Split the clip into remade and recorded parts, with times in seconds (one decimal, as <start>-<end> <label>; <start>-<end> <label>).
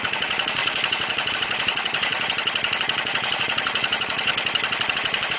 0.0-2.1 remade; 2.1-2.8 recorded; 2.8-4.3 remade; 4.3-4.9 recorded; 4.9-5.4 remade